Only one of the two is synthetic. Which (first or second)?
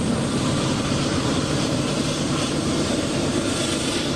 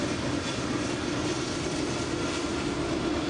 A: first